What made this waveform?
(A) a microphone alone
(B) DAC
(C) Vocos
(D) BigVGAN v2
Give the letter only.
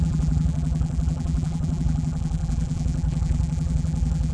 D